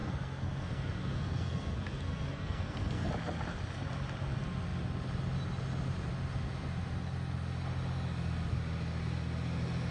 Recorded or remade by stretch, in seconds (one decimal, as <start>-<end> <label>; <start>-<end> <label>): 0.0-3.1 remade; 3.1-9.9 recorded